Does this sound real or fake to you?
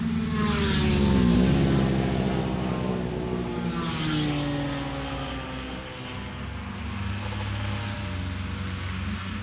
real